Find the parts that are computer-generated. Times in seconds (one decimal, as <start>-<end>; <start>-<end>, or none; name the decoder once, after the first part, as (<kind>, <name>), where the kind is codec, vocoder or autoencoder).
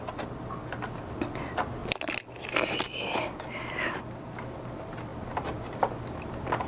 none